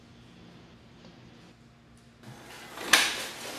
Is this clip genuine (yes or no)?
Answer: yes